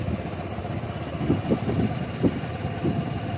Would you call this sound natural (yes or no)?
yes